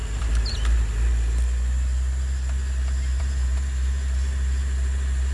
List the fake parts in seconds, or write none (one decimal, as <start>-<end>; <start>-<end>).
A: none

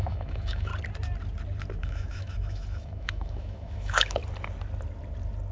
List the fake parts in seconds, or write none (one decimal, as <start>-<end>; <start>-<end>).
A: 0.0-0.7; 1.8-4.2

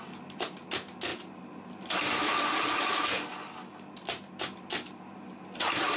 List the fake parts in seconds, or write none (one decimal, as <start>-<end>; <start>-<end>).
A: none

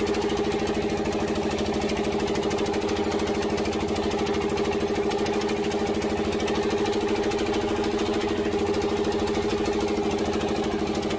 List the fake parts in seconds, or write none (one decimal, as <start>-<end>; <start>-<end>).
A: none